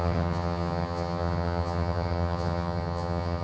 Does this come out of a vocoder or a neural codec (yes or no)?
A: yes